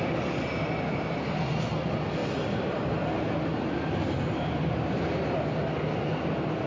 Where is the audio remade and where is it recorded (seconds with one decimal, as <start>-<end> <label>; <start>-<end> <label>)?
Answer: 0.0-6.7 recorded